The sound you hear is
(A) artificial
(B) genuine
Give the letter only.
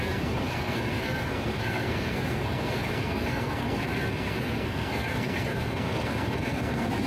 A